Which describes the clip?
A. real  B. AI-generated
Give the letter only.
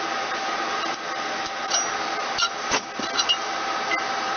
A